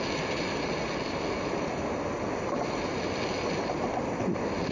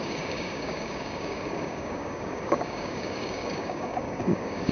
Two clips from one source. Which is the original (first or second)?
first